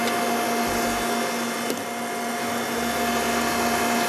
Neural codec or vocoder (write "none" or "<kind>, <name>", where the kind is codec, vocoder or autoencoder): none